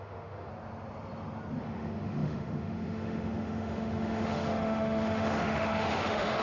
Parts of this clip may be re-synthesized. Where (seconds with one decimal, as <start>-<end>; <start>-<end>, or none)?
0.0-0.5; 1.6-6.4